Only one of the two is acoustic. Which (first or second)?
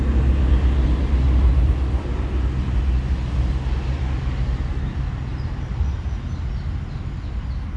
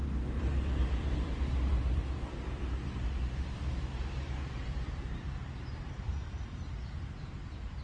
first